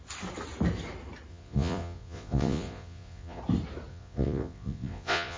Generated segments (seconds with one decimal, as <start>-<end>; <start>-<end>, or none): 1.3-3.4; 3.9-5.4